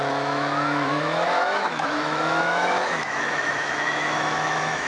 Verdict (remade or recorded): remade